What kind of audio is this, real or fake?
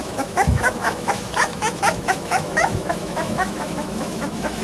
fake